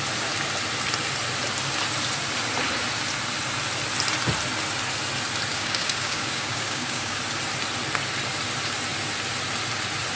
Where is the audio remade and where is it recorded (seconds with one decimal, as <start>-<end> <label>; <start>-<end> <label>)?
0.0-5.5 recorded; 5.5-7.2 remade; 7.2-10.2 recorded